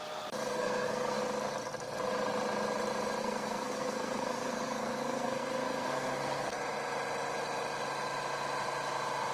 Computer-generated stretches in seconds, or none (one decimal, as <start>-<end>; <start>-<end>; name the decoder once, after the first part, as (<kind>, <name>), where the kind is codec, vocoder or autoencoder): 0.5-1.2 (codec, SNAC); 3.2-6.6